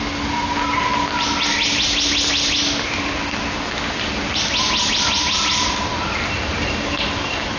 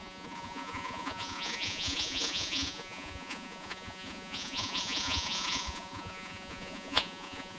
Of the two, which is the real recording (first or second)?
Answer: first